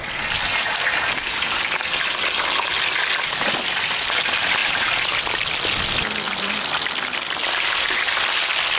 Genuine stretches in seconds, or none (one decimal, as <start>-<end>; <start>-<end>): 0.0-4.6; 5.2-8.8